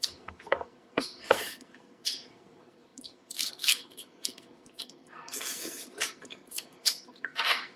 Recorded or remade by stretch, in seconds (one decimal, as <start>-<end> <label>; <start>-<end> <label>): 0.0-7.8 remade